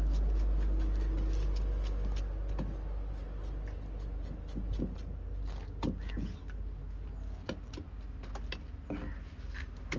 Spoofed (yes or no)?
no